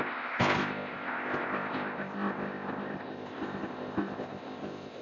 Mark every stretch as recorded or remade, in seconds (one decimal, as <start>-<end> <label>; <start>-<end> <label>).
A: 0.0-5.0 remade